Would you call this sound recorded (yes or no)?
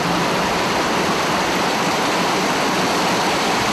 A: yes